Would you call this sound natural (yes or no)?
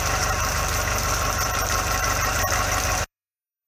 no